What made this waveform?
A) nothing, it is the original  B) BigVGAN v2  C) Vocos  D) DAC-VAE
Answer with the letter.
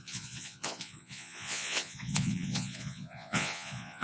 C